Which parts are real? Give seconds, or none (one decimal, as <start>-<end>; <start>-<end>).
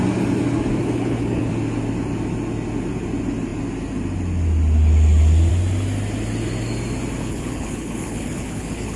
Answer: 0.0-0.7; 1.5-7.2